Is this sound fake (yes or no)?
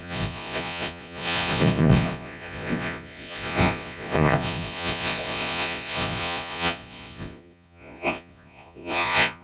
yes